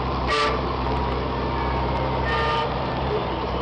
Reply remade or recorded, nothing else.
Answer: remade